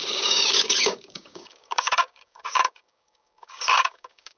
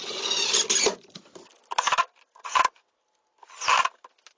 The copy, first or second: first